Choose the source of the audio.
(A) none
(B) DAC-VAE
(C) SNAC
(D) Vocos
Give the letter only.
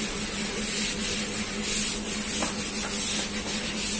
A